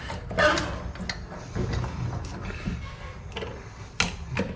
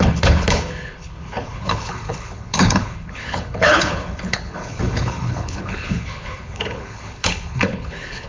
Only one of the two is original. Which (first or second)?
first